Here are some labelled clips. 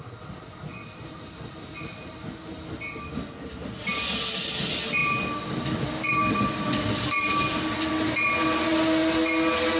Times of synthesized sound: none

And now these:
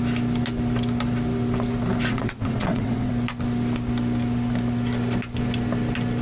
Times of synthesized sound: 2.1-3.1 (vocoder, WaveNeXt)

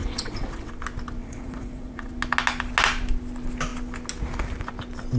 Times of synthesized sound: 0.0-0.7 (vocoder, WaveNeXt); 1.2-2.1

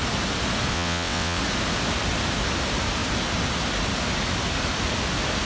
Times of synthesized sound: 0.7-1.4 (vocoder, WaveNeXt)

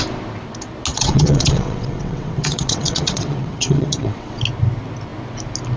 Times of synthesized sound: 0.9-4.4 (vocoder, WaveNeXt)